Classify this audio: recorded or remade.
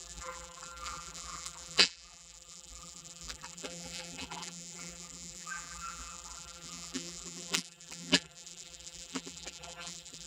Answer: remade